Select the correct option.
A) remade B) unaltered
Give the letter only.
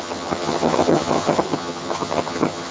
A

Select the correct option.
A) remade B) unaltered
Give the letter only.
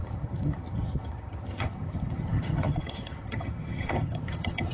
A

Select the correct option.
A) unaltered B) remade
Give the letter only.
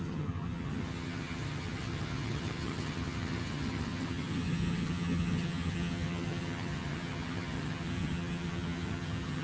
B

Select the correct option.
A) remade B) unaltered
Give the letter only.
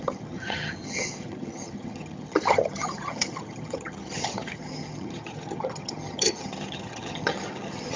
A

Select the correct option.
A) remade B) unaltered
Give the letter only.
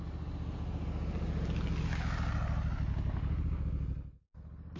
B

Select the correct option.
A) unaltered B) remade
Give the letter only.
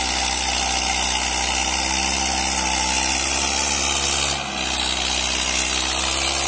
A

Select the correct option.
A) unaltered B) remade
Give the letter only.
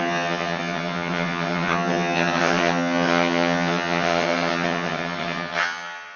B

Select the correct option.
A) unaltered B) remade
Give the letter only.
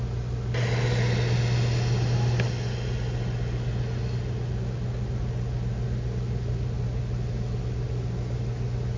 A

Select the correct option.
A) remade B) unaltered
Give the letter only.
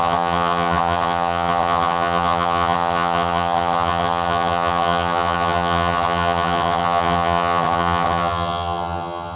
A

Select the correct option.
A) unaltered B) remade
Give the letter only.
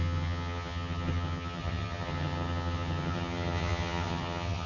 B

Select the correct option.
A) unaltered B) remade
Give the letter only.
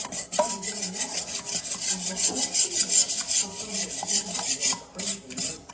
A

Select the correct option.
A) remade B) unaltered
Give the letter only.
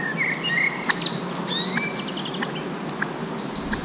B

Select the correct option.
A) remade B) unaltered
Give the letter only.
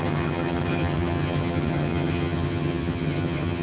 A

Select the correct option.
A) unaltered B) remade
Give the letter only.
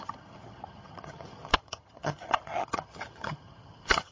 B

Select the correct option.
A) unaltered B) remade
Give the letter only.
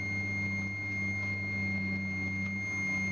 A